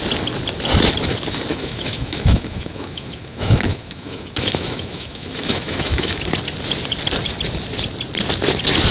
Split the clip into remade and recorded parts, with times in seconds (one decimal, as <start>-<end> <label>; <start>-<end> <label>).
0.0-1.5 recorded; 1.5-6.2 remade; 6.2-8.9 recorded